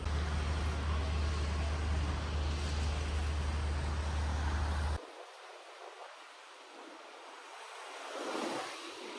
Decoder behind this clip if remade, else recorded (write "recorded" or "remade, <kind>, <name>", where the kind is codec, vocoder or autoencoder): recorded